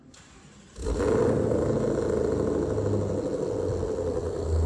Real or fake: real